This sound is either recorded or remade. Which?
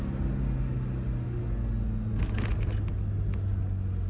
recorded